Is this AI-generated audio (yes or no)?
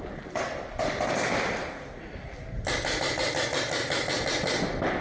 no